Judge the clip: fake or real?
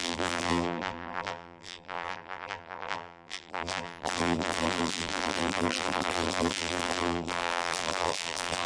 fake